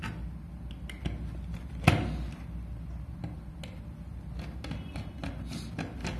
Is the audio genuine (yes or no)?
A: yes